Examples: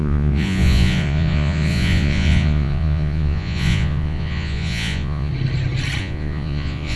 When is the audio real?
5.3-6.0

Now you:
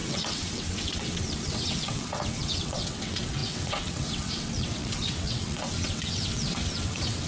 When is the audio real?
none

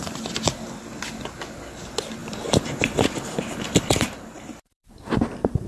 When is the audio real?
0.0-2.2; 5.1-5.7

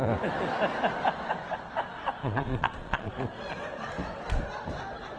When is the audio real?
0.0-2.2; 3.1-5.2

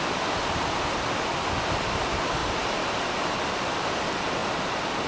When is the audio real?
0.0-2.4; 3.8-5.1